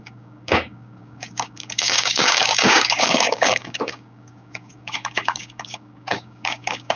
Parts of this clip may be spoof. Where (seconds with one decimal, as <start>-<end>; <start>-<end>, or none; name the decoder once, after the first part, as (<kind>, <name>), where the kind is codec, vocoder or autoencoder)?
0.0-7.0 (codec, DAC)